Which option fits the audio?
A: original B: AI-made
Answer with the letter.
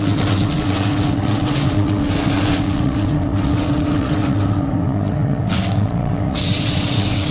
B